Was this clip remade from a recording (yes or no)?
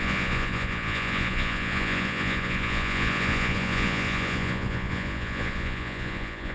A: yes